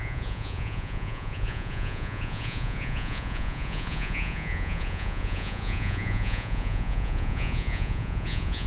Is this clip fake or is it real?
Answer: fake